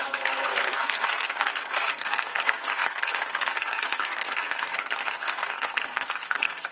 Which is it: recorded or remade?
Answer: remade